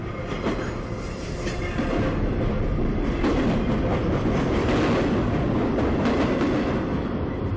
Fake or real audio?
real